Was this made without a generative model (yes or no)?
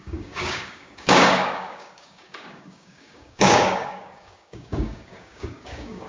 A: no